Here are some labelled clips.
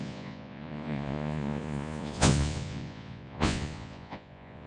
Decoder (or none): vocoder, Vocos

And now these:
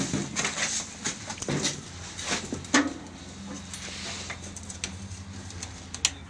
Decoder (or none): none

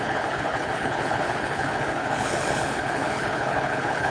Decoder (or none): codec, HILCodec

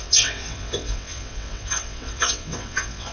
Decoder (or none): vocoder, WaveNeXt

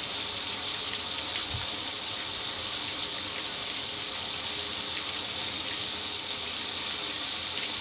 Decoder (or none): none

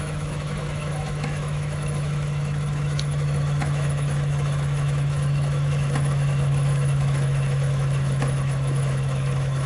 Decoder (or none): autoencoder, DAC-VAE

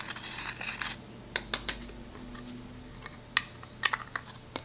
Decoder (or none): none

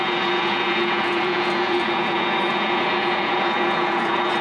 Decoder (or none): vocoder, Vocos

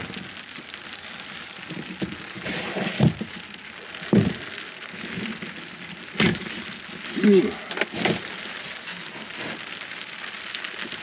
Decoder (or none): none